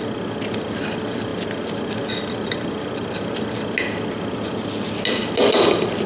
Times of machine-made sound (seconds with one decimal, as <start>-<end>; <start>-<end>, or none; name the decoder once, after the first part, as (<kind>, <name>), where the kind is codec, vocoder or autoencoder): none